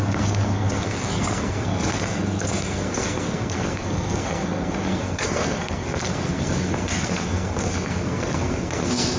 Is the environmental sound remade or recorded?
remade